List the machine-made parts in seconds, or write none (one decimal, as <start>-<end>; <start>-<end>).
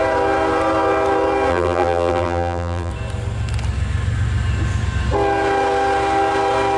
1.5-2.9